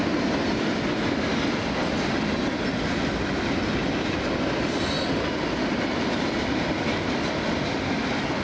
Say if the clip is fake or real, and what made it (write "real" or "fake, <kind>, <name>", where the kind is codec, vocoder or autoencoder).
real